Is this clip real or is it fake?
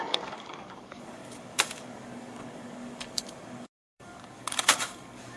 fake